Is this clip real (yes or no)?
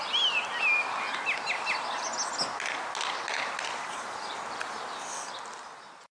yes